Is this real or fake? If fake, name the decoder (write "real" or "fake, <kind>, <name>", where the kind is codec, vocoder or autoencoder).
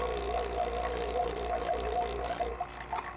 real